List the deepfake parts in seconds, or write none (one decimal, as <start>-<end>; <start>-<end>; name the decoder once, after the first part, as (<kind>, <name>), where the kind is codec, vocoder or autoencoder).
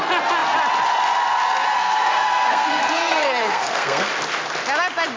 1.8-4.1 (codec, SNAC)